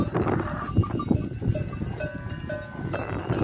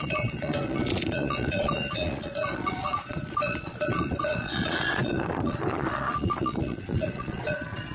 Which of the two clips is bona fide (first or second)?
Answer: first